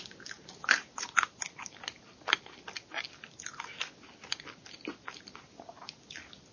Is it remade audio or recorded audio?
recorded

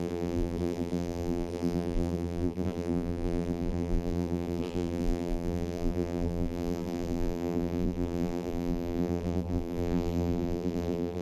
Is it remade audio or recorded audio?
remade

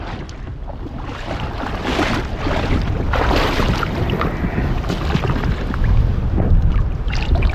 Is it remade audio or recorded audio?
recorded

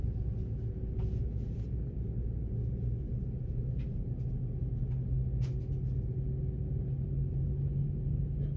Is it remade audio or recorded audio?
recorded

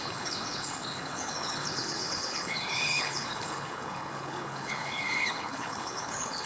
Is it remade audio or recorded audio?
remade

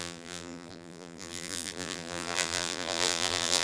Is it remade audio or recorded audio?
remade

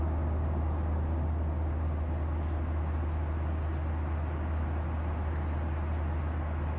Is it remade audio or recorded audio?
recorded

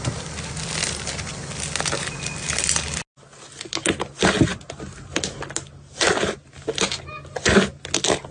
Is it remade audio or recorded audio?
recorded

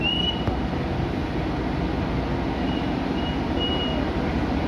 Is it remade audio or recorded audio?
recorded